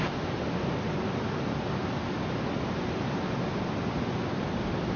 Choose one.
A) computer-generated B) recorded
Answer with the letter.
B